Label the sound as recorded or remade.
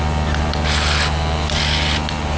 recorded